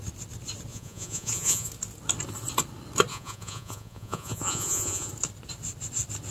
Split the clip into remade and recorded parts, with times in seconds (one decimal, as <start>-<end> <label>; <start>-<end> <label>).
0.0-0.7 recorded; 0.7-1.7 remade; 1.7-3.1 recorded; 3.1-5.1 remade; 5.1-6.3 recorded